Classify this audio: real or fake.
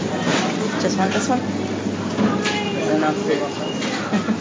real